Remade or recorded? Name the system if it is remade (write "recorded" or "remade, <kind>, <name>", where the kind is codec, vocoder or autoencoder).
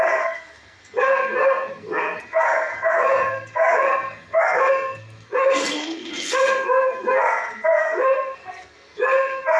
remade, codec, SNAC